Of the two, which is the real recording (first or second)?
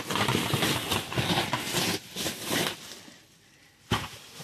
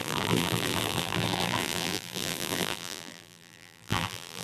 first